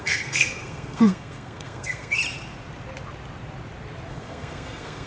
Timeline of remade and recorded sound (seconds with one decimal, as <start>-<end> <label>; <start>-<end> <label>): 0.0-2.2 remade; 2.2-4.1 recorded; 4.1-5.1 remade